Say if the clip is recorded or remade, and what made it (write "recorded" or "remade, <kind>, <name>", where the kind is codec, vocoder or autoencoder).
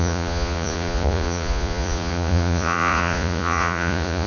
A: remade, vocoder, Vocos